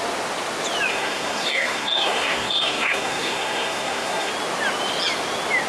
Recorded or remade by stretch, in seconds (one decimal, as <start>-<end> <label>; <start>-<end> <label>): 0.0-0.9 recorded; 0.9-4.3 remade; 4.3-5.7 recorded